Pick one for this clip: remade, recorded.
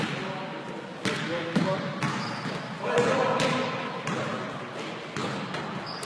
recorded